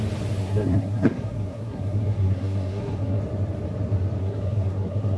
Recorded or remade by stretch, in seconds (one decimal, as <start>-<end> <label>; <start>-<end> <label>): 0.0-0.4 recorded; 0.4-3.2 remade; 3.2-4.2 recorded; 4.2-5.2 remade